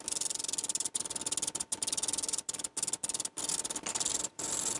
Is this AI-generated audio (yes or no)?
no